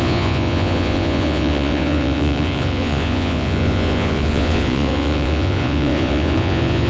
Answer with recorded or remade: remade